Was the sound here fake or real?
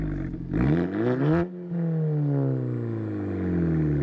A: real